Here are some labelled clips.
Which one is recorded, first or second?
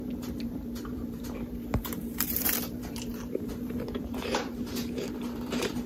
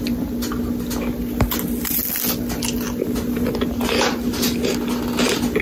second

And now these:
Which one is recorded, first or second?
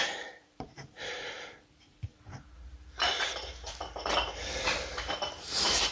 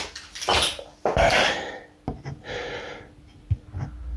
second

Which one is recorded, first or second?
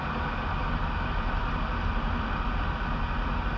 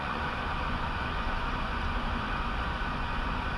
first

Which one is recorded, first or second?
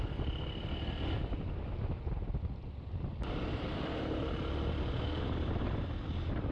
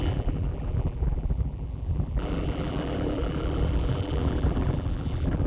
first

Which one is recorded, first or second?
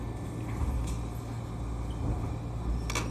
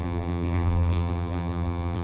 first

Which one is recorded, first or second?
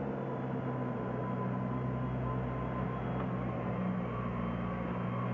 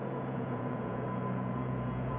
first